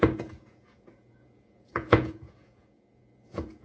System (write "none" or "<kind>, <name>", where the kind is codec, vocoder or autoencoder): vocoder, Vocos